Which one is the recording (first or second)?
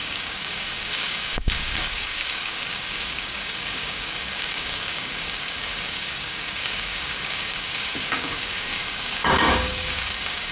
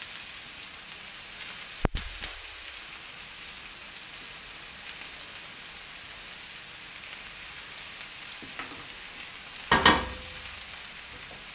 second